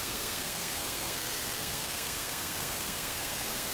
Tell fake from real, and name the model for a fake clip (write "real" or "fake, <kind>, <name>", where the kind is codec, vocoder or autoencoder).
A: fake, codec, SNAC